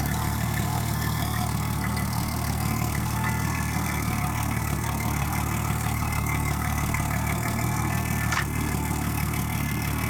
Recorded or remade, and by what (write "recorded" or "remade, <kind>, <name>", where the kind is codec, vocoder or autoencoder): remade, codec, SNAC